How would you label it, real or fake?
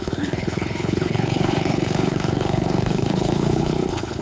fake